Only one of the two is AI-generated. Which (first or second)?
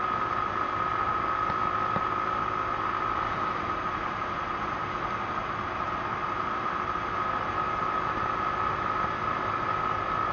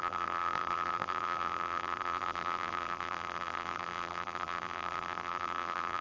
second